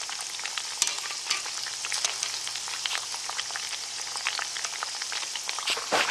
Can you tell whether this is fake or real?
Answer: real